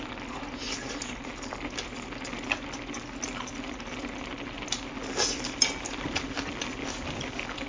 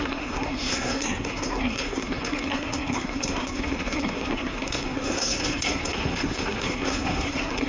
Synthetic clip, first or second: second